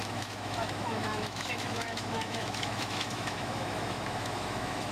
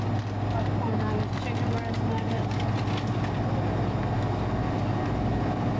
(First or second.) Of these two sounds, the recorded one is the second